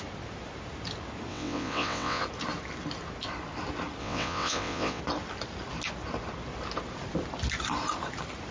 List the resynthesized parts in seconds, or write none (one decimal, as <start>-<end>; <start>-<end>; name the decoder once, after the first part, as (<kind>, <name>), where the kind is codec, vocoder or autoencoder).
1.3-2.2 (vocoder, WaveNeXt); 4.0-5.0